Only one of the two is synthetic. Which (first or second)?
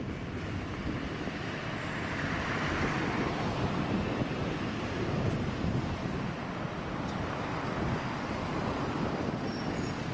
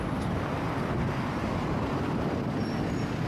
first